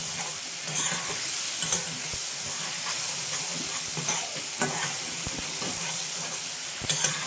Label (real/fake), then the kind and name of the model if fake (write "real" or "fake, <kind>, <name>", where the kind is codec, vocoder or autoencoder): real